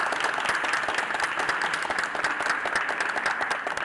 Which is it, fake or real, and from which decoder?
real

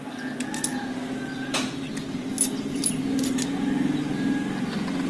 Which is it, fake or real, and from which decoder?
real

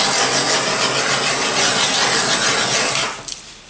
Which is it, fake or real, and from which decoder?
real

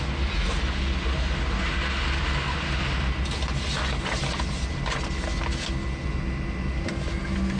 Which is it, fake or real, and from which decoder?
real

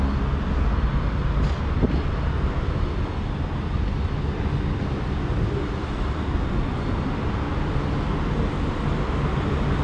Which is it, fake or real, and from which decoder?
real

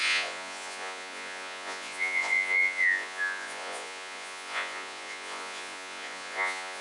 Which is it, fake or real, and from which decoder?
fake, vocoder, Vocos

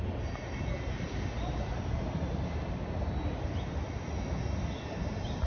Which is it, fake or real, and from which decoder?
real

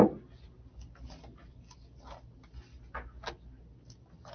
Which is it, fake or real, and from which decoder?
real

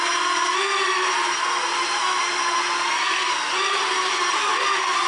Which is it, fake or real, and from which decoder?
real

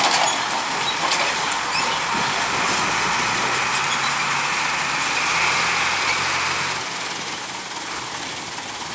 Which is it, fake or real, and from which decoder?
real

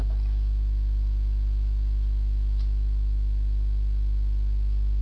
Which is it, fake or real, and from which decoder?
real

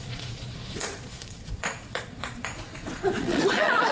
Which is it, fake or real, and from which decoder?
fake, vocoder, Vocos